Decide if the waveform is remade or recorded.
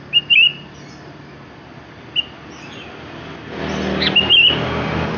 recorded